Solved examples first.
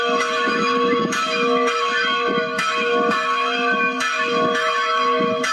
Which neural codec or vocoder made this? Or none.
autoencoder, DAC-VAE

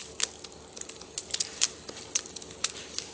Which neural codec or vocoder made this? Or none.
none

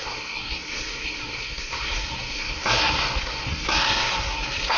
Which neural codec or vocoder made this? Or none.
codec, SNAC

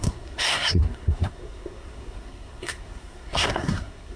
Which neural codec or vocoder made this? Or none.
codec, SNAC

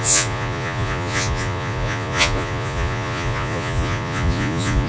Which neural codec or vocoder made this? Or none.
vocoder, Vocos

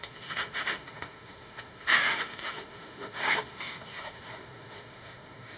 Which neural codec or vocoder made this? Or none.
autoencoder, DAC-VAE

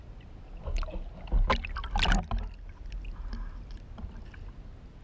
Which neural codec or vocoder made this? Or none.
none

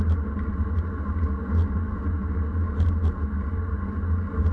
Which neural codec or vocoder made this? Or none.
none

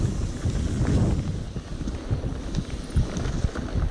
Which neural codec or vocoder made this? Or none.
none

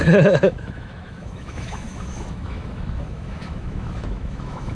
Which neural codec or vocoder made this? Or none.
autoencoder, DAC-VAE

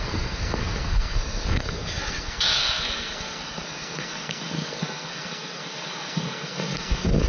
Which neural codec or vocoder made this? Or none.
codec, SNAC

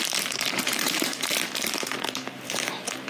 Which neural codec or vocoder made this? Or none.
vocoder, BigVGAN v2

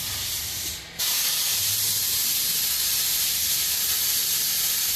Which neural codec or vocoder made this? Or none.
vocoder, BigVGAN v2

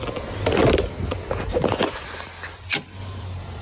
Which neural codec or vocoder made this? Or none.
vocoder, BigVGAN v2